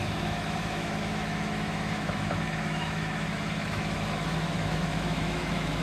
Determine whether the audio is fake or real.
fake